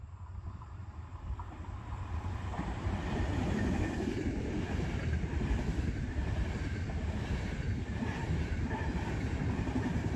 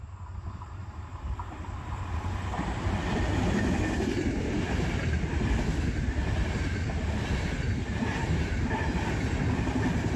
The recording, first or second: second